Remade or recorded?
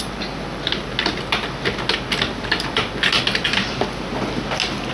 recorded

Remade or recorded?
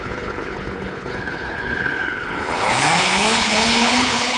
remade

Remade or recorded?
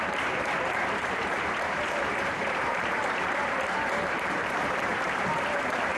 remade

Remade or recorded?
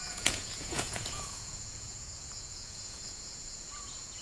remade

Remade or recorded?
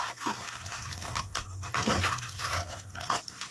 remade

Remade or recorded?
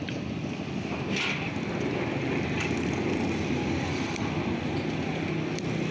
recorded